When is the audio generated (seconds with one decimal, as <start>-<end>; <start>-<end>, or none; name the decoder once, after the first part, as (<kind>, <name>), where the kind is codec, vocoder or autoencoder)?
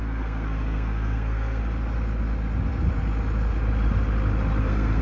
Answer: 0.0-1.6 (codec, SNAC); 4.6-5.0